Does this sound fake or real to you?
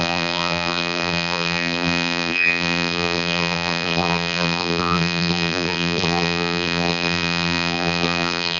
fake